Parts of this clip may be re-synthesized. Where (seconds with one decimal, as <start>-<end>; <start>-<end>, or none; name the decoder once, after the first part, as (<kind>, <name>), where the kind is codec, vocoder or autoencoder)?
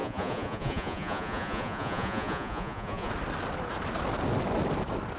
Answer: 0.0-3.1 (vocoder, Vocos)